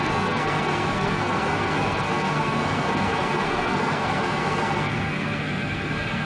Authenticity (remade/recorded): remade